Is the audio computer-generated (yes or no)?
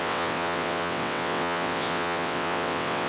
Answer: yes